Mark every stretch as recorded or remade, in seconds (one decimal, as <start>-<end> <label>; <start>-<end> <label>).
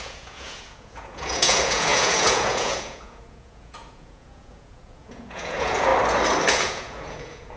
0.0-5.9 remade; 5.9-6.5 recorded; 6.5-7.6 remade